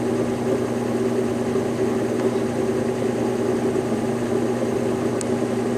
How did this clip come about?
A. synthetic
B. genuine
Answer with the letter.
B